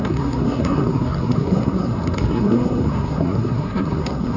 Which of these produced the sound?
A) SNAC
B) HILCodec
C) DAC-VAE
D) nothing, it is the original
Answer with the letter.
A